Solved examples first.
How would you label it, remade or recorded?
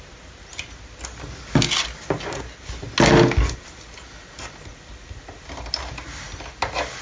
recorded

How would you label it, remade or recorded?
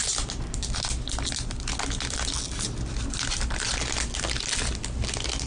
recorded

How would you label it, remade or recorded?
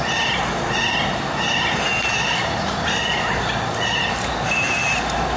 recorded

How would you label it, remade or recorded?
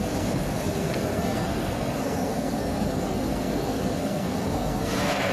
remade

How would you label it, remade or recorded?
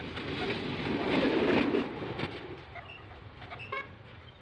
recorded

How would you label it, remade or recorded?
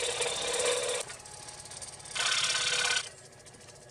recorded